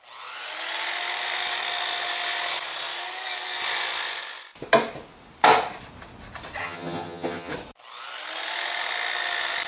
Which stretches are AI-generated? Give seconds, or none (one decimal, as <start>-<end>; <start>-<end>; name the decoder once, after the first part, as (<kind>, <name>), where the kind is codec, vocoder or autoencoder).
6.6-7.5 (vocoder, HiFi-GAN)